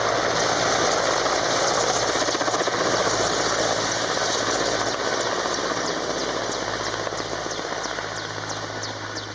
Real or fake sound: real